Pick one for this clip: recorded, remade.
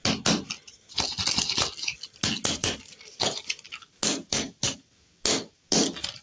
recorded